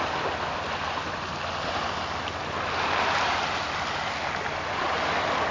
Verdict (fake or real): real